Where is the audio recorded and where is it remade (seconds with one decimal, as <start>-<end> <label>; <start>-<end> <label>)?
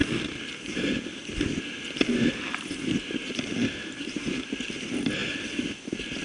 0.0-3.6 recorded; 3.6-4.4 remade; 4.4-6.2 recorded